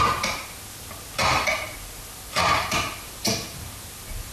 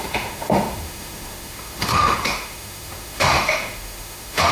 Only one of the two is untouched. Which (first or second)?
first